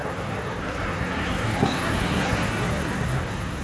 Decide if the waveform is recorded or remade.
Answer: remade